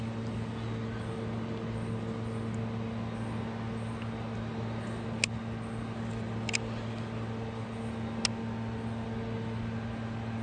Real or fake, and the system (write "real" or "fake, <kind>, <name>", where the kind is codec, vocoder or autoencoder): real